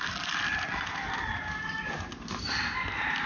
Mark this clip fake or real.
real